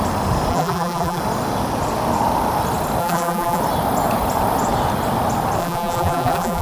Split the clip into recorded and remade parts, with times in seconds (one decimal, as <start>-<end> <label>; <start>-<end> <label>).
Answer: 0.0-0.5 recorded; 0.5-1.2 remade; 1.2-3.0 recorded; 3.0-3.6 remade; 3.6-5.6 recorded; 5.6-6.6 remade

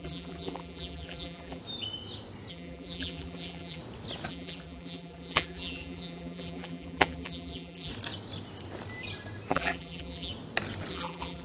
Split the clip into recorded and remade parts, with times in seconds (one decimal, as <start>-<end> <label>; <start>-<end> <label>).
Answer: 0.0-1.6 remade; 1.6-2.5 recorded; 2.5-3.8 remade; 3.8-4.3 recorded; 4.3-7.9 remade; 7.9-9.5 recorded; 9.5-10.3 remade; 10.3-10.9 recorded; 10.9-11.4 remade

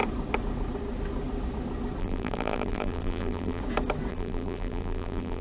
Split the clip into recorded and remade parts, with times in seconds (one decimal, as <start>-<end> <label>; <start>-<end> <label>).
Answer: 0.0-2.0 recorded; 2.0-3.6 remade; 3.6-4.1 recorded; 4.1-5.4 remade